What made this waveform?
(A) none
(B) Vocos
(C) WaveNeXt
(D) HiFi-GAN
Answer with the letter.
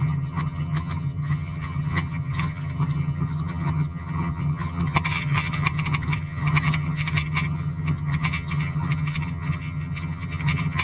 D